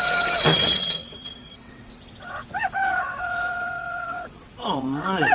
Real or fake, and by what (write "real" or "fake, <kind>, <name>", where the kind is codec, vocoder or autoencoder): fake, vocoder, WaveNeXt